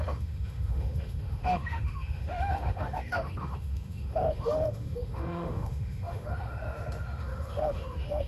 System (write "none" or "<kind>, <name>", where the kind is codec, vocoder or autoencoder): autoencoder, DAC-VAE